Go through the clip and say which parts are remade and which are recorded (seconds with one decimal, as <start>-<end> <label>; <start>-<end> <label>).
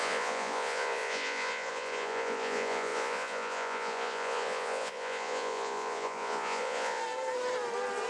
0.0-7.0 remade; 7.0-8.1 recorded